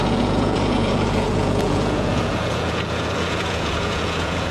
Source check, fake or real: fake